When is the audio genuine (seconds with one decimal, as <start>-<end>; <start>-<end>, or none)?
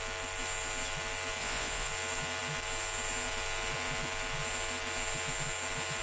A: 0.0-1.4; 1.9-6.0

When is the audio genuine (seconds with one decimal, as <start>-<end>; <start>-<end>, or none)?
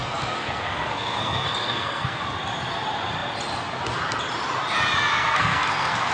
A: 2.2-5.1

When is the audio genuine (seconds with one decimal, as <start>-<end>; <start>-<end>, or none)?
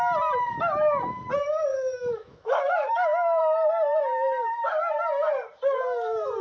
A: 0.0-1.7; 3.4-6.4